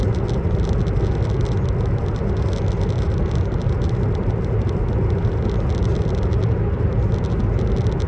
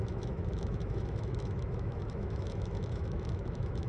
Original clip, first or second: first